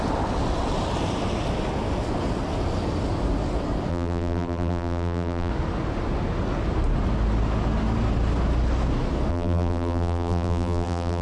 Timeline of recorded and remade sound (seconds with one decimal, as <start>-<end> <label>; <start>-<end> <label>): 0.0-3.9 recorded; 3.9-5.5 remade; 5.5-9.3 recorded; 9.3-11.2 remade